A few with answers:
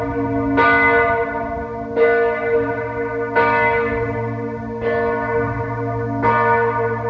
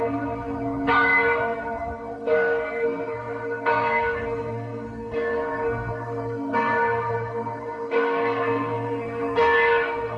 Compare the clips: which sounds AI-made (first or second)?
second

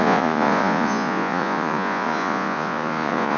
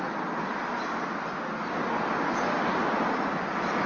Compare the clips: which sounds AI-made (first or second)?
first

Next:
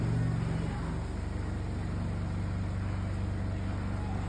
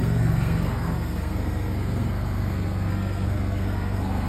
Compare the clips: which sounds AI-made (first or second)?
second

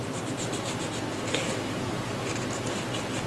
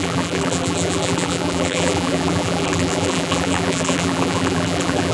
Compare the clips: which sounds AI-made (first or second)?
second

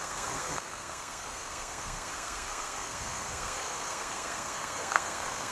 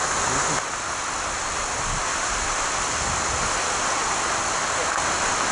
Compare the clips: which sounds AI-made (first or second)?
first